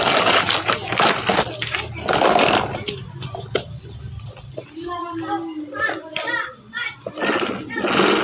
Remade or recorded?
recorded